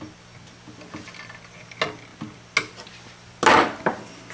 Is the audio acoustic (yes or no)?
yes